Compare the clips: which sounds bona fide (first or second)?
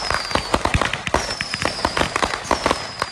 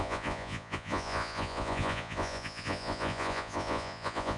first